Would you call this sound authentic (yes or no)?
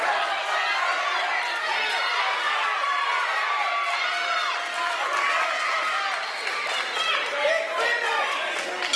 yes